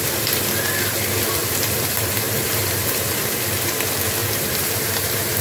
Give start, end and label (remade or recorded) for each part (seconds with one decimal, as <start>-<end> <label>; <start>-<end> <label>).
0.0-1.4 recorded; 1.4-3.3 remade; 3.3-4.2 recorded; 4.2-5.4 remade